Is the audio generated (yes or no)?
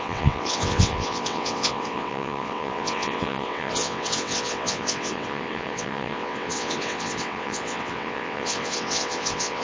yes